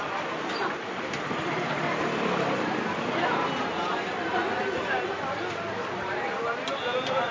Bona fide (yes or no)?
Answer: yes